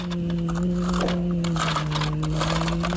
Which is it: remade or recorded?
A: recorded